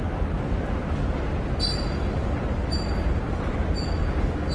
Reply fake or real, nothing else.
real